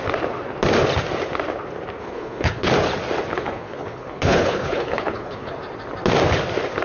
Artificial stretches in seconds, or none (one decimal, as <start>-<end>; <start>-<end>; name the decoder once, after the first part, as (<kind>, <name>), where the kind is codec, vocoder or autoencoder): 2.0-2.7 (codec, HILCodec); 3.3-5.5